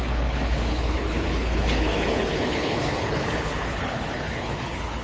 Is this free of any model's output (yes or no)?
no